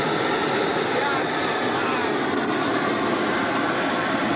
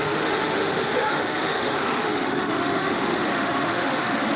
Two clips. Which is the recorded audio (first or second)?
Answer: first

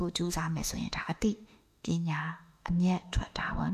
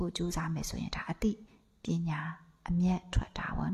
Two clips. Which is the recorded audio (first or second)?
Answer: second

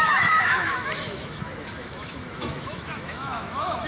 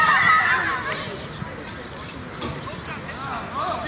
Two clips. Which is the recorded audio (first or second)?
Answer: second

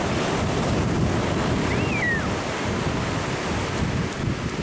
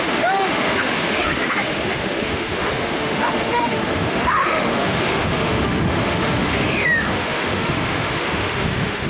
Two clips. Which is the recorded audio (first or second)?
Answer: first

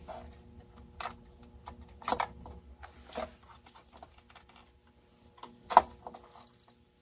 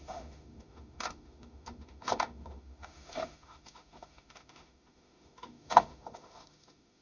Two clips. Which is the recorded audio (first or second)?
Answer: first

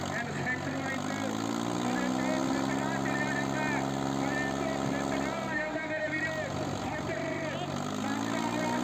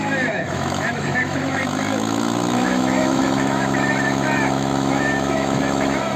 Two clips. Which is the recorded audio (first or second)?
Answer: first